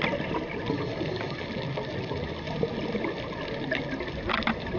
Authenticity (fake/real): real